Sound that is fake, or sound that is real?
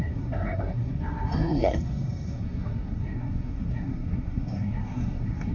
fake